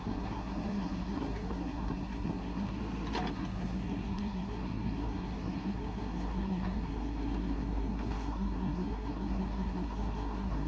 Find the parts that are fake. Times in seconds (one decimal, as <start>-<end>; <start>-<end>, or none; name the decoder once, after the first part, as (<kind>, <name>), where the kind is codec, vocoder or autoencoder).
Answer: 0.0-2.8 (codec, SNAC); 3.3-10.7